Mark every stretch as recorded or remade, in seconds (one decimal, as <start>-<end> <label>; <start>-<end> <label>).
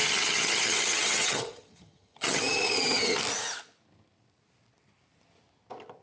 0.0-3.2 remade; 3.2-6.0 recorded